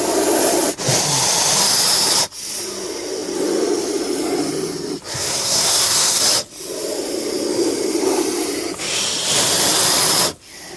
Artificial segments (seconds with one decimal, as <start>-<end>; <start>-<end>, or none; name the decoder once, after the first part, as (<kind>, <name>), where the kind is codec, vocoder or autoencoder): 5.1-6.2 (codec, SNAC)